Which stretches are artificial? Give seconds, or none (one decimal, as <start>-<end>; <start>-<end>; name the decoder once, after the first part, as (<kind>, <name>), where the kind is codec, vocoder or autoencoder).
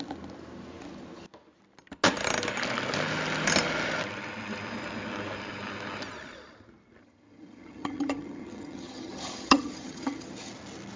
7.0-10.5 (vocoder, HiFi-GAN)